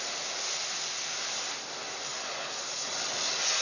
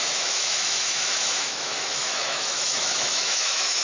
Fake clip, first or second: second